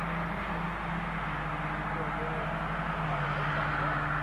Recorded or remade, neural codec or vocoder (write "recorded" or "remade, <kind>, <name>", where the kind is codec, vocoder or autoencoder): recorded